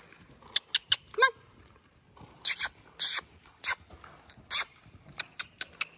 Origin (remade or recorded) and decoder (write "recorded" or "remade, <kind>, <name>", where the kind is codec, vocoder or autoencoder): recorded